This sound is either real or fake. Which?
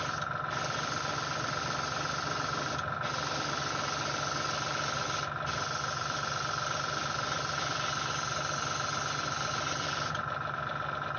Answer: real